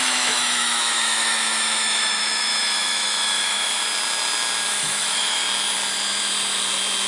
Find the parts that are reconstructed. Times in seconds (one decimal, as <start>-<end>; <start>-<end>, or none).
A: 0.0-3.8; 4.7-5.4

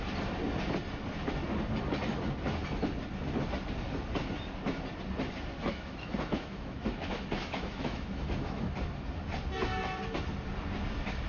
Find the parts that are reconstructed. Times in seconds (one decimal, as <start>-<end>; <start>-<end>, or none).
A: 5.5-8.7